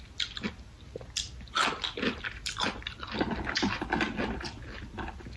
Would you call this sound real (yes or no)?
yes